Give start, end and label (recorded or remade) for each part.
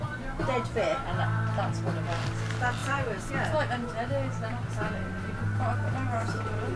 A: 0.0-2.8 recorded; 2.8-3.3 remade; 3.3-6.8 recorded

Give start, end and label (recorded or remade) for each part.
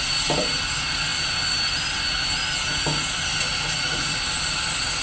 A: 0.0-3.5 recorded; 3.5-4.2 remade; 4.2-5.0 recorded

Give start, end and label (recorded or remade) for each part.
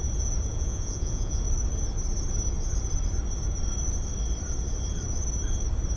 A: 0.0-0.5 recorded; 0.5-1.4 remade; 1.4-6.0 recorded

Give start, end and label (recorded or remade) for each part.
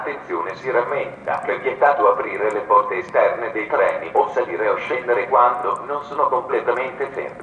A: 0.0-1.2 recorded; 1.2-3.0 remade; 3.0-7.4 recorded